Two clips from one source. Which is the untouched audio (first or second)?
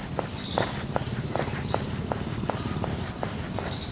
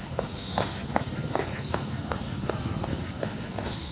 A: first